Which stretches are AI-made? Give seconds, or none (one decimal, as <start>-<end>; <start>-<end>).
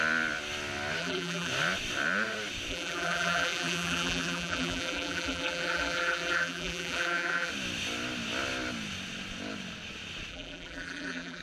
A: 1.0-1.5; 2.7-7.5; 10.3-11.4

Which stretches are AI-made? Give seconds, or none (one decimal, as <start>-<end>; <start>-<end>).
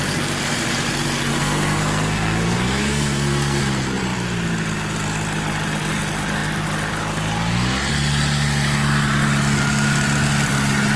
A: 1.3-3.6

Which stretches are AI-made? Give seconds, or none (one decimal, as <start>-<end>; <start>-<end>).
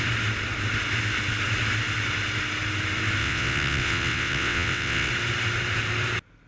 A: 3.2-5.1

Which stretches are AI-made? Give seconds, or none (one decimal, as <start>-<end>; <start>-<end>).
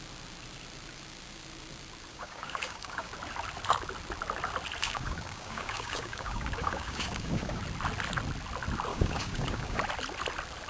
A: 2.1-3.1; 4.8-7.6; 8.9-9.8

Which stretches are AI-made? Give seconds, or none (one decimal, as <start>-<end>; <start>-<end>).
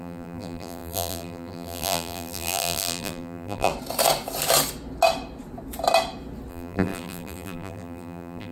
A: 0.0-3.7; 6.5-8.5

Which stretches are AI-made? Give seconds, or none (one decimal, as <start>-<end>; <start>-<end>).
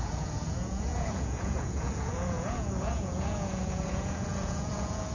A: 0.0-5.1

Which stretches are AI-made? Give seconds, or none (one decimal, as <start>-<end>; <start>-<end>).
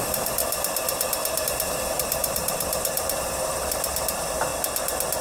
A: 0.0-0.4; 1.4-4.5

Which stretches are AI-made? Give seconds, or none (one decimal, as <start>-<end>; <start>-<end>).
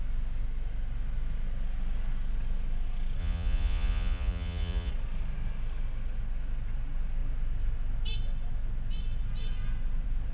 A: 3.2-4.9